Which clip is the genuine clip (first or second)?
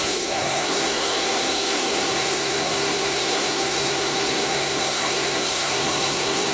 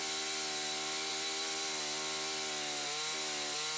second